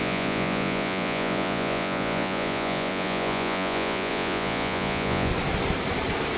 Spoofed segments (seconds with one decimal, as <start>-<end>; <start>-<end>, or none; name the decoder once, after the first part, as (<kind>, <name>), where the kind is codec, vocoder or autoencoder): 0.0-5.3 (vocoder, Vocos)